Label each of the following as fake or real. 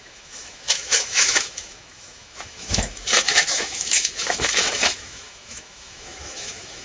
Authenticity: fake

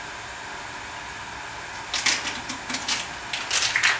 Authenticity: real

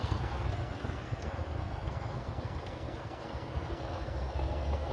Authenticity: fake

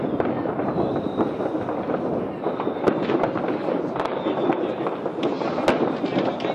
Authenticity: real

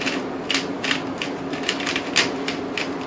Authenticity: real